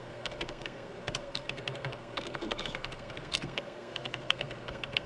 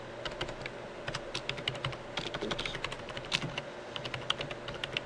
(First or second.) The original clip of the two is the second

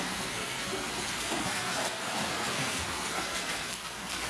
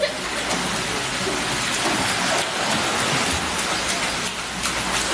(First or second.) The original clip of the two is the second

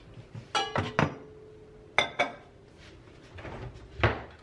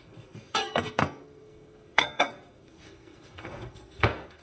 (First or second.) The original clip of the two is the first